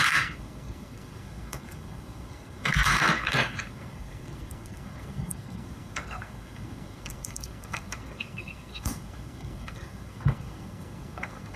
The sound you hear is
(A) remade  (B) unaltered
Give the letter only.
A